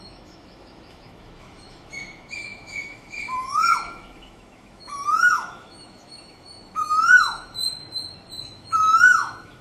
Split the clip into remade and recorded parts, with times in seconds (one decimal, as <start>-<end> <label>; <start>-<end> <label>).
0.0-7.6 remade; 7.6-8.4 recorded; 8.4-9.6 remade